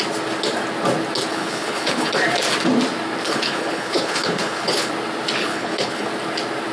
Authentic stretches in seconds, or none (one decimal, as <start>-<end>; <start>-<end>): 0.0-1.3; 2.1-3.2; 4.9-5.4; 6.1-6.7